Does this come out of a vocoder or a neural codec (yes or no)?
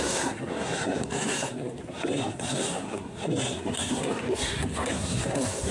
yes